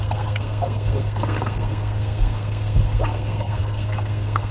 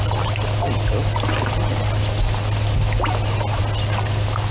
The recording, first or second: second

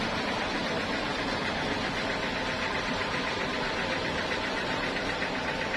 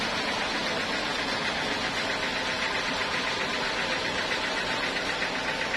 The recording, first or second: second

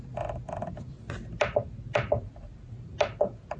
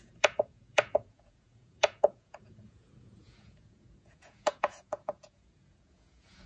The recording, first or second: first